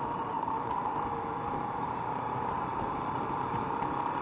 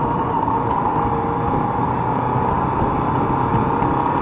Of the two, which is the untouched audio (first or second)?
second